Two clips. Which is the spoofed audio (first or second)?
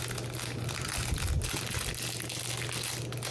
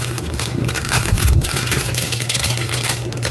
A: second